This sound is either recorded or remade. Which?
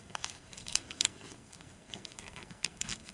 remade